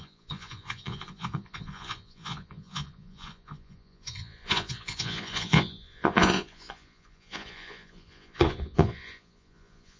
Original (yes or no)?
no